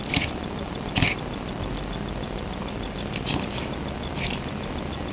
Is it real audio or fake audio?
real